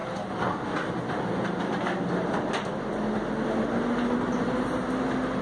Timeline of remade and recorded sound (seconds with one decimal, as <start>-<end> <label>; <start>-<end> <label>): 0.0-5.4 recorded

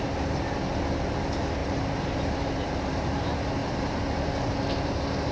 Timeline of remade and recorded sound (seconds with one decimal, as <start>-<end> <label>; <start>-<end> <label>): 0.0-1.6 recorded; 1.6-3.1 remade; 3.1-5.3 recorded

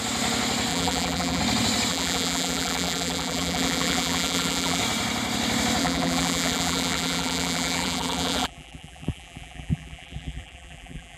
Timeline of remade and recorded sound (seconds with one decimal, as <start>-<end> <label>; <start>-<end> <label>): 0.0-0.7 recorded; 0.7-1.4 remade; 1.4-1.9 recorded; 1.9-4.8 remade; 4.8-5.8 recorded; 5.8-11.2 remade

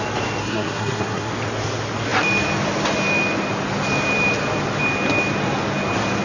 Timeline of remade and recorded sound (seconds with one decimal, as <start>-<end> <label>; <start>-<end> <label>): 0.0-0.4 recorded; 0.4-1.3 remade; 1.3-6.2 recorded

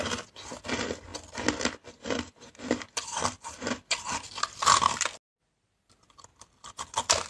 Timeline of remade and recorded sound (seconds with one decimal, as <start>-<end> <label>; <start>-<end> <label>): 0.0-1.1 recorded; 1.1-4.4 remade; 4.4-7.3 recorded